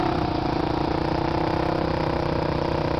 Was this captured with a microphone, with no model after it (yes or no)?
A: yes